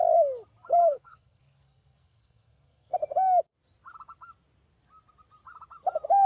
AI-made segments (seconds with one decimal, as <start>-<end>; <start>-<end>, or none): 0.8-2.9